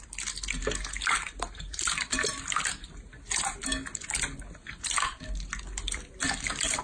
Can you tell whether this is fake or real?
real